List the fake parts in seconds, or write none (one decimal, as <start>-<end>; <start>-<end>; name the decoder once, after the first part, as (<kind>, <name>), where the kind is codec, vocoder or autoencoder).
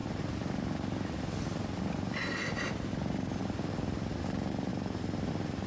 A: 0.0-3.4 (vocoder, BigVGAN v2)